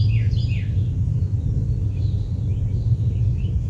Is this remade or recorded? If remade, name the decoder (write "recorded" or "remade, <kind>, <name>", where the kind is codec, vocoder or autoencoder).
recorded